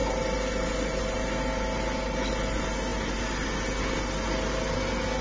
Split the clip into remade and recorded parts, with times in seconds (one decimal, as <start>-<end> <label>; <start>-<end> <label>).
0.0-5.2 recorded